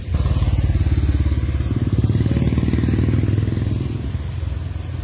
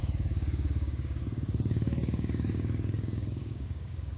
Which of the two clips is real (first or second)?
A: first